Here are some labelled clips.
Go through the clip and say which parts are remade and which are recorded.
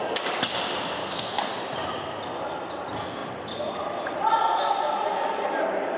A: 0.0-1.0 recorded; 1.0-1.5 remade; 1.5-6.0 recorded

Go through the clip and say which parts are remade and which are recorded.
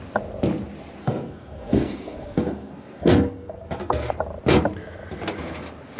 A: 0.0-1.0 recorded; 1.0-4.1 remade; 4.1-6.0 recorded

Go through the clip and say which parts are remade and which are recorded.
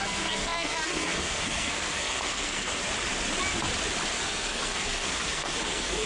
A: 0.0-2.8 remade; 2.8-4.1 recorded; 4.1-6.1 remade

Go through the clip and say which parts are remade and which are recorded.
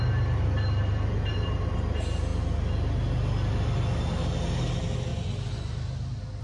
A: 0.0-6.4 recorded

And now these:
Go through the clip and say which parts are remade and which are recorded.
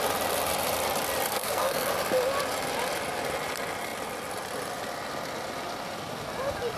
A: 0.0-1.3 recorded; 1.3-1.9 remade; 1.9-6.8 recorded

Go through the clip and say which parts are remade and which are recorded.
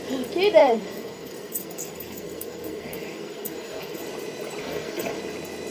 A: 0.0-0.6 recorded; 0.6-4.0 remade; 4.0-4.6 recorded; 4.6-5.2 remade; 5.2-5.7 recorded